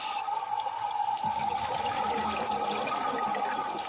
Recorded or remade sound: recorded